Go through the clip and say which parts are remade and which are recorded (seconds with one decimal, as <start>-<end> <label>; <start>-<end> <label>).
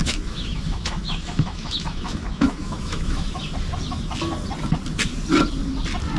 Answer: 0.0-3.3 remade; 3.3-6.2 recorded